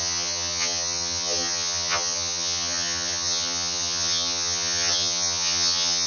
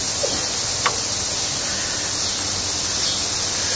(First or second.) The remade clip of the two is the first